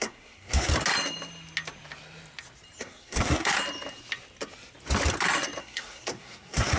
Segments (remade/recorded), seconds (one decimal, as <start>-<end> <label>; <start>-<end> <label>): 0.0-0.7 remade; 0.7-2.8 recorded; 2.8-3.5 remade; 3.5-5.6 recorded; 5.6-6.8 remade